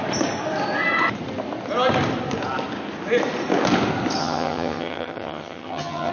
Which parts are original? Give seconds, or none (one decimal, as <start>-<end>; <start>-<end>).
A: 0.0-4.2